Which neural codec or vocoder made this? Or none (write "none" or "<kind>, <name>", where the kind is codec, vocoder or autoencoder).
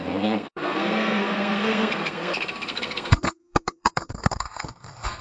codec, SNAC